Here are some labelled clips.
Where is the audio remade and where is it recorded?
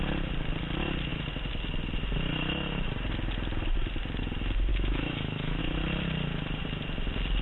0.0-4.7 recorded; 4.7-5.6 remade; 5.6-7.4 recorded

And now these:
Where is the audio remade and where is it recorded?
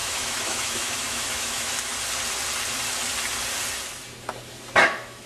0.0-1.9 remade; 1.9-4.8 recorded; 4.8-5.3 remade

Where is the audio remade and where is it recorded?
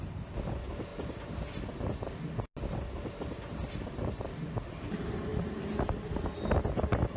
0.0-7.2 recorded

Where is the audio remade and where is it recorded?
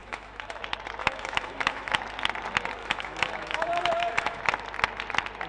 0.0-0.6 remade; 0.6-1.0 recorded; 1.0-1.9 remade; 1.9-2.8 recorded; 2.8-4.4 remade; 4.4-5.5 recorded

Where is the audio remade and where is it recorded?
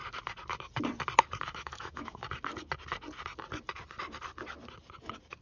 0.0-1.4 recorded; 1.4-2.2 remade; 2.2-5.4 recorded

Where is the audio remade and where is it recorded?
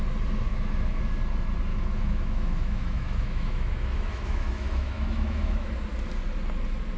0.0-0.5 recorded; 0.5-1.0 remade; 1.0-1.7 recorded; 1.7-5.7 remade; 5.7-7.0 recorded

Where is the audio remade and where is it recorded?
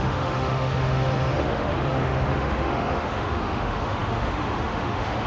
0.0-5.3 remade